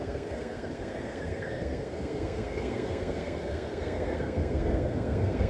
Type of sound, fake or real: fake